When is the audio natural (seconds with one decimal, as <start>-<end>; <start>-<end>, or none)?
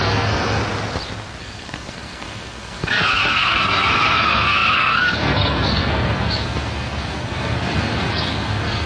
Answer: 0.6-1.4